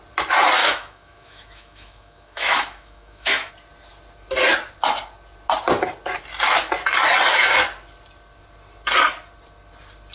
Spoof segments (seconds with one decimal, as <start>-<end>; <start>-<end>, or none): 0.6-3.5